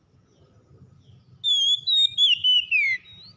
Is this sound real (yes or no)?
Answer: yes